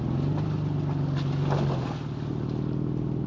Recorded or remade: recorded